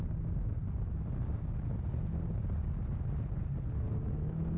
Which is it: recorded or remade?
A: recorded